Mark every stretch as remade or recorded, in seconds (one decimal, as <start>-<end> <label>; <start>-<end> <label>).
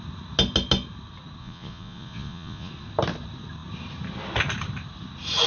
0.0-1.4 recorded; 1.4-2.7 remade; 2.7-5.5 recorded